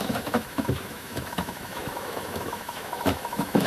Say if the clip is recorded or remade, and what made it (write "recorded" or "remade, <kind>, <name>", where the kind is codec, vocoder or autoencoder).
remade, autoencoder, DAC-VAE